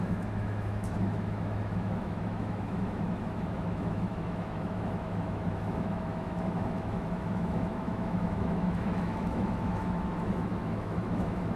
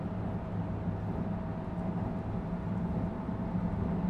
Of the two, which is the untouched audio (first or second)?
second